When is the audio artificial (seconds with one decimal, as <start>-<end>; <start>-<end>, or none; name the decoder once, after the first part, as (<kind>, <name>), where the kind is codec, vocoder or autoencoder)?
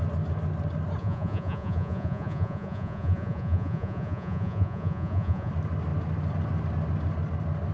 1.0-5.5 (vocoder, Vocos)